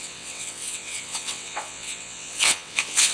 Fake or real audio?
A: fake